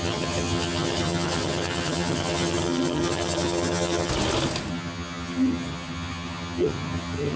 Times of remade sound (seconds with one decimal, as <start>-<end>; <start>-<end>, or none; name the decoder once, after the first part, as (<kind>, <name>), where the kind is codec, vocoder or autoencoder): 0.0-4.1 (vocoder, HiFi-GAN); 4.7-7.4